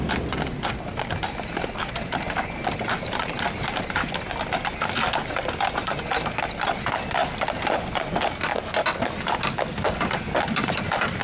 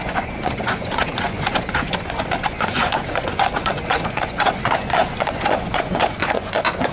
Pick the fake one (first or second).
second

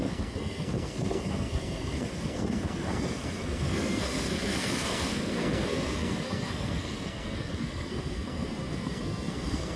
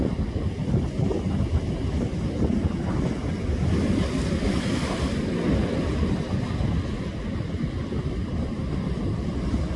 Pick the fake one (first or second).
first